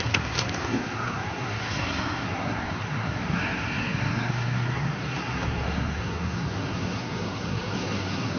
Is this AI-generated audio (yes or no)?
yes